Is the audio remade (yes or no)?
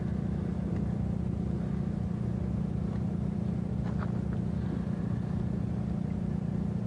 no